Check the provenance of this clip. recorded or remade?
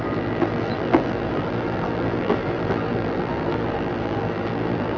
remade